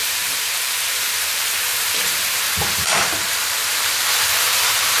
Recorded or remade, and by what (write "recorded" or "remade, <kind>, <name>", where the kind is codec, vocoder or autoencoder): remade, vocoder, BigVGAN v2